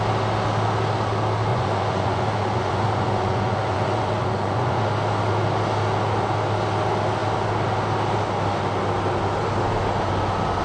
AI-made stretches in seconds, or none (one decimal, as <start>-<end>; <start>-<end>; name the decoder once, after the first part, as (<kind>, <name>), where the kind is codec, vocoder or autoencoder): 1.5-4.8 (vocoder, Vocos)

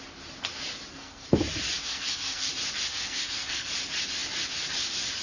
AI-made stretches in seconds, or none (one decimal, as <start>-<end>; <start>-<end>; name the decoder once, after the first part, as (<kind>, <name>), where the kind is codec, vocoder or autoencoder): 0.9-1.4 (codec, SNAC); 1.8-2.5; 2.9-3.7

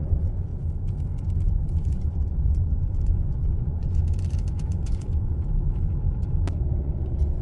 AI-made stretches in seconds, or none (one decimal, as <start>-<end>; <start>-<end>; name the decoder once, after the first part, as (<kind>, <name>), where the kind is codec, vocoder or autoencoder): 0.0-0.5 (vocoder, Vocos); 1.7-4.0; 4.5-5.3; 6.8-7.4

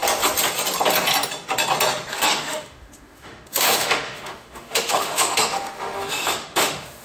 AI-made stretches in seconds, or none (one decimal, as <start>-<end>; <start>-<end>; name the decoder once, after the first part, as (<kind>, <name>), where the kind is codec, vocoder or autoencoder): 2.1-7.0 (autoencoder, DAC-VAE)

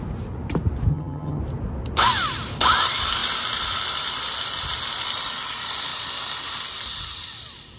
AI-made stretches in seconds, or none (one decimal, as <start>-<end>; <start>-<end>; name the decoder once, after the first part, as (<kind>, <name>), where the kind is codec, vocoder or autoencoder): 0.9-1.4 (vocoder, HiFi-GAN)

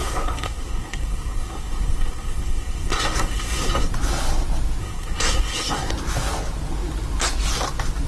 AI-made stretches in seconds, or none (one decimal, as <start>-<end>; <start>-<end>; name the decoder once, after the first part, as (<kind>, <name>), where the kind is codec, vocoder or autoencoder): 0.0-3.9 (codec, SNAC); 4.8-5.9